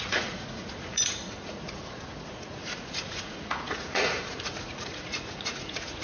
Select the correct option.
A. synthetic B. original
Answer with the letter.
A